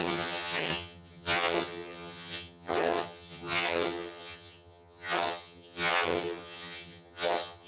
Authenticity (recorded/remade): remade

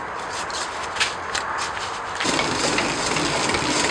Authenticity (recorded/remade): remade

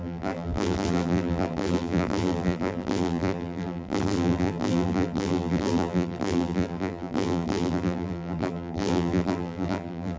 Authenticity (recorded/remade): remade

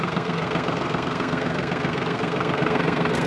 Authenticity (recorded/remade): remade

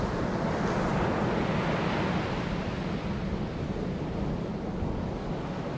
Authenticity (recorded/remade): recorded